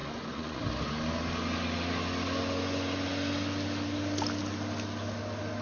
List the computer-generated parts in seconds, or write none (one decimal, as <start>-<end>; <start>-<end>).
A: 0.0-0.6